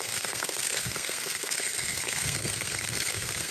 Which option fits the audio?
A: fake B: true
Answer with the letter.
A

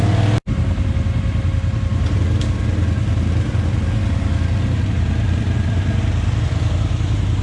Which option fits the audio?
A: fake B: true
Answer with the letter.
B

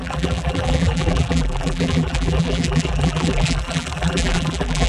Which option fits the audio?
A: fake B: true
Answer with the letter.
A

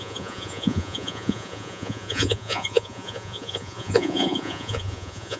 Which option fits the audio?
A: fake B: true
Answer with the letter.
A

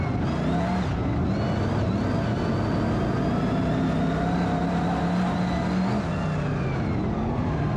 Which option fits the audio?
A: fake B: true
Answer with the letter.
B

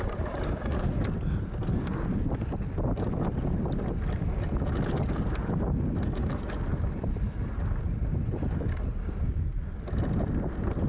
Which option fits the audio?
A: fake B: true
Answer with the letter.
B